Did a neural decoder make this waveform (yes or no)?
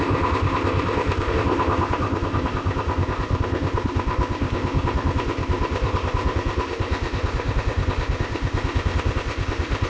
yes